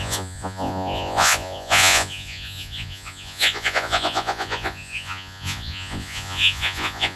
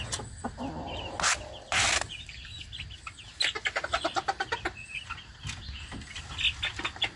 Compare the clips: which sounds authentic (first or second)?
second